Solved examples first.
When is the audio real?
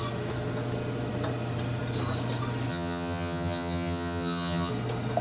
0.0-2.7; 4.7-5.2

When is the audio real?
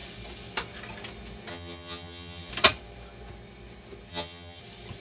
0.0-1.5; 2.5-4.1; 4.6-5.0